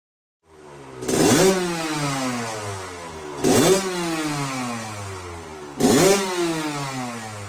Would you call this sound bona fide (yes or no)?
yes